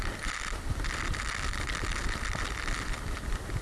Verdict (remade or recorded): recorded